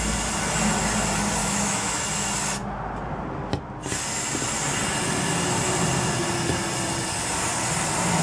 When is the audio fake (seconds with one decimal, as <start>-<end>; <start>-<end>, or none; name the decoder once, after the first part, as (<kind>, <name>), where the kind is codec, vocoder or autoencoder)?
1.4-2.0 (autoencoder, DAC-VAE)